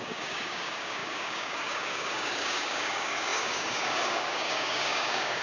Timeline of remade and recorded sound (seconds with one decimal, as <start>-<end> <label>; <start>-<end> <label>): 0.0-5.4 remade